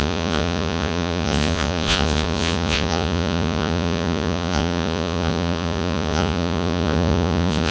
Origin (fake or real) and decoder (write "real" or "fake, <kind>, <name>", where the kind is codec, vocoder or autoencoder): fake, vocoder, Vocos